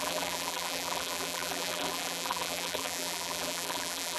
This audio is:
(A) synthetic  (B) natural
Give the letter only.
A